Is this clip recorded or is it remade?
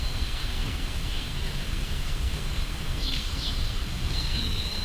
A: remade